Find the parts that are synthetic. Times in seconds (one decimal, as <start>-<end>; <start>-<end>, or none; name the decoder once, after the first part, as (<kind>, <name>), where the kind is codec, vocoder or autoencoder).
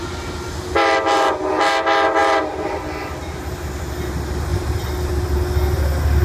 4.5-5.1 (vocoder, BigVGAN v2)